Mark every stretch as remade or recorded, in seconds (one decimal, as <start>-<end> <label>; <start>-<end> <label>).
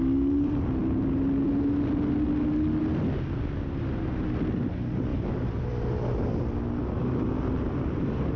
0.0-8.4 recorded